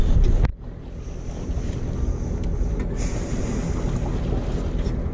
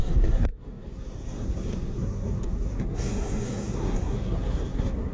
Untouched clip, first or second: first